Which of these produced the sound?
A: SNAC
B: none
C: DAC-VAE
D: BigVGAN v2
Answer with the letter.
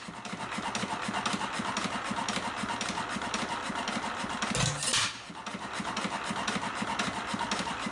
B